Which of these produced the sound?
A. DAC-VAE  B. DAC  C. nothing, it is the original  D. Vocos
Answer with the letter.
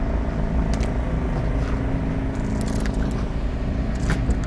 C